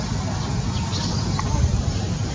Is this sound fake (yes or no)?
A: no